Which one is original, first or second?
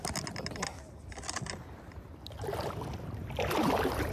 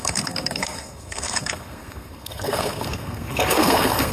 first